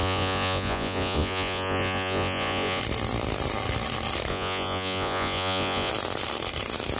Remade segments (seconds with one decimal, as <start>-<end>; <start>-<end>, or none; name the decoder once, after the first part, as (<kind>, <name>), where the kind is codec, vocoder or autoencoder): 0.0-2.8 (vocoder, Vocos); 4.3-5.9